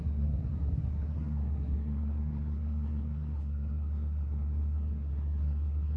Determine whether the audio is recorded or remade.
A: remade